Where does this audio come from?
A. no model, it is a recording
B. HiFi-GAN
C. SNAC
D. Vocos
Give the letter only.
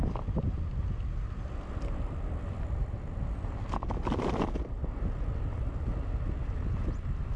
A